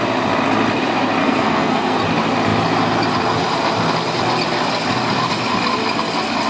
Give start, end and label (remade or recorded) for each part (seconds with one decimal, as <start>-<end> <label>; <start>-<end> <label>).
0.0-1.2 recorded; 1.2-2.0 remade; 2.0-6.5 recorded